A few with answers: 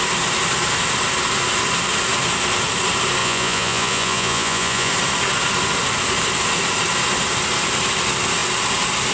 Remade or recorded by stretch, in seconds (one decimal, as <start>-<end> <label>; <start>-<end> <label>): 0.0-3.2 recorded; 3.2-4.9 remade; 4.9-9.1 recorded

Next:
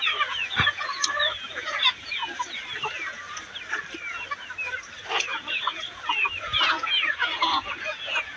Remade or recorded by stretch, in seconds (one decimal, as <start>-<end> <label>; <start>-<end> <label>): 0.0-2.2 remade; 2.2-5.1 recorded; 5.1-8.4 remade

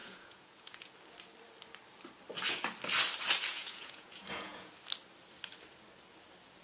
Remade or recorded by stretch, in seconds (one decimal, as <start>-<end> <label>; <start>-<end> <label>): 0.0-0.9 remade; 0.9-3.5 recorded; 3.5-4.7 remade; 4.7-6.6 recorded

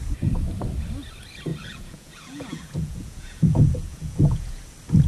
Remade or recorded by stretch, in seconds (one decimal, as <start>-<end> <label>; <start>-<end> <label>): 0.0-1.5 recorded; 1.5-4.6 remade; 4.6-5.1 recorded

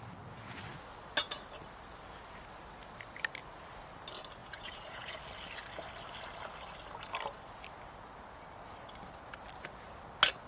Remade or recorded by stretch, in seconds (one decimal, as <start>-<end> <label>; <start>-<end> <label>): 0.0-4.4 recorded; 4.4-5.2 remade; 5.2-10.5 recorded

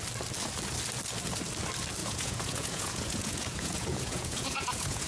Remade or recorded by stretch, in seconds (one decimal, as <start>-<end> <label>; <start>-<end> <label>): 0.0-2.0 recorded; 2.0-5.1 remade